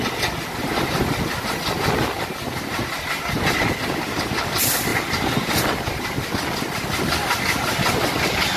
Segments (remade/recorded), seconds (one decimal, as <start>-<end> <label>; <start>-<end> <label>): 0.0-8.6 recorded